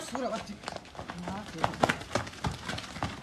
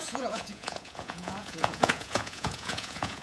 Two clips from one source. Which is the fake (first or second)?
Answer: second